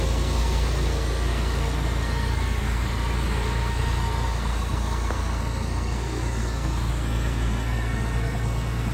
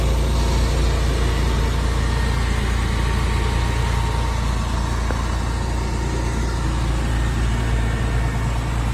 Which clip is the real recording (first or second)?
second